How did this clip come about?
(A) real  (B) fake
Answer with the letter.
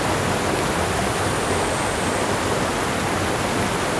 A